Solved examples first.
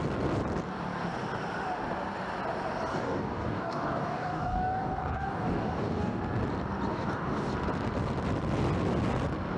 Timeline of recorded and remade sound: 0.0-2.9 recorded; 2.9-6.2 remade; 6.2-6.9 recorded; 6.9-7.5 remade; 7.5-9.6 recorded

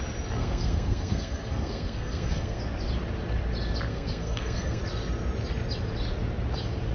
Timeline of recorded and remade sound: 0.0-0.4 recorded; 0.4-2.6 remade; 2.6-3.9 recorded; 3.9-4.8 remade; 4.8-6.9 recorded

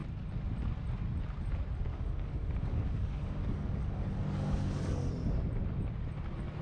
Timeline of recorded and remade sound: 0.0-1.9 recorded; 1.9-5.1 remade; 5.1-6.6 recorded

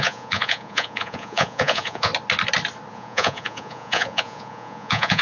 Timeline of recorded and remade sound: 0.0-2.1 remade; 2.1-2.9 recorded; 2.9-5.2 remade

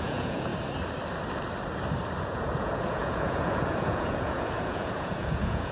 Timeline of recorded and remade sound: 0.0-0.5 remade; 0.5-2.2 recorded; 2.2-5.7 remade